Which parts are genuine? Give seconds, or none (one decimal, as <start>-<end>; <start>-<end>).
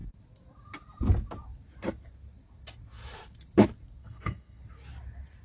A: 0.0-4.0; 4.6-5.4